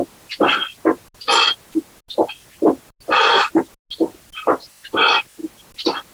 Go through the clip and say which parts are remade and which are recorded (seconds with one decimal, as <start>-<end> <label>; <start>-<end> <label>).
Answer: 0.0-6.1 recorded